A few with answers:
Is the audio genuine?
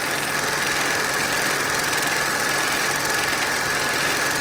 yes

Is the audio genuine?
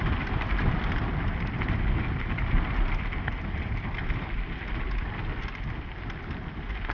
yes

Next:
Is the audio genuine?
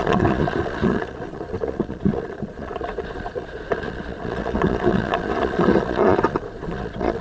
no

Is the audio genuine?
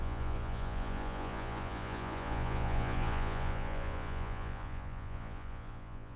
no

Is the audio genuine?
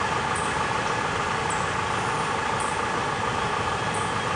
yes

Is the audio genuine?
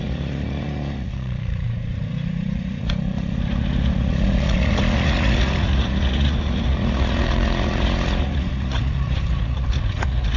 no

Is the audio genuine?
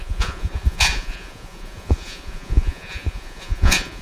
no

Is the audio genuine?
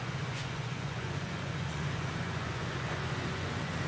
no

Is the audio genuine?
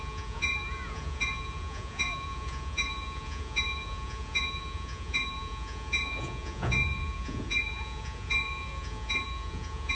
no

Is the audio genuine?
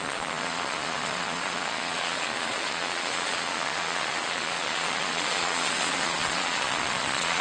no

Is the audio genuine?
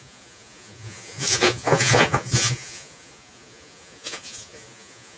no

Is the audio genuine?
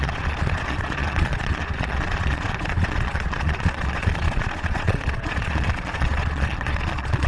no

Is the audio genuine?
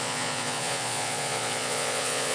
no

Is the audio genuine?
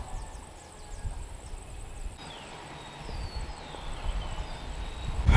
yes